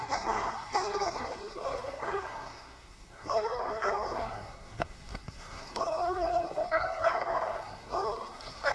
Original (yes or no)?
no